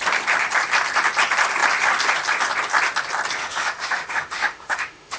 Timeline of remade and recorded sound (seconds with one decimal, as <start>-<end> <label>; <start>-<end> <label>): 0.0-3.4 recorded; 3.4-5.2 remade